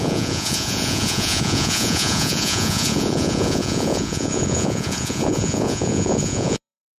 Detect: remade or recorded remade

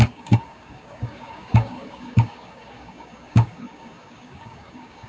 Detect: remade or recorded remade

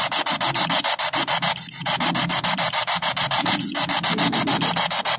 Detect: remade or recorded recorded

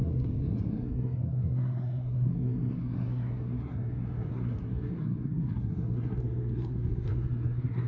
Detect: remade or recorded remade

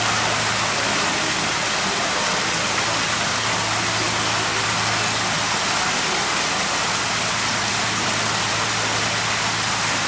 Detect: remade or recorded recorded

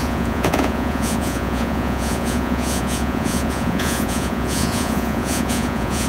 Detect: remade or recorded remade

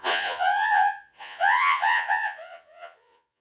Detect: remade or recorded remade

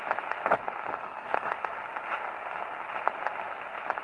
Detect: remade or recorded recorded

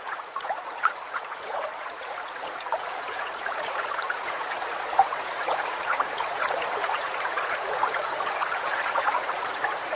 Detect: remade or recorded remade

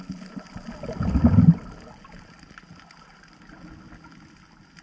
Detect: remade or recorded recorded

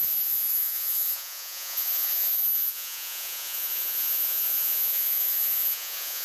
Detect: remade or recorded remade